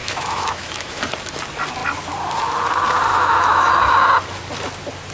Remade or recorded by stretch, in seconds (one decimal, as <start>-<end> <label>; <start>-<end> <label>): 0.0-1.0 remade; 1.0-3.1 recorded; 3.1-3.7 remade; 3.7-5.1 recorded